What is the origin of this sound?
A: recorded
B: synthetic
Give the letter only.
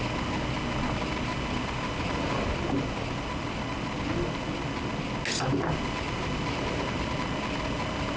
A